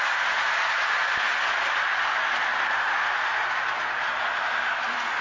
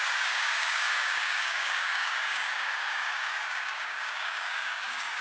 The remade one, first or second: second